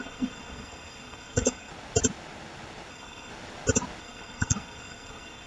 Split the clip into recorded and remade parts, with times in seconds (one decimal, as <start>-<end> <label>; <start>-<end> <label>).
0.0-1.7 remade; 1.7-2.9 recorded; 2.9-3.3 remade; 3.3-4.0 recorded; 4.0-5.5 remade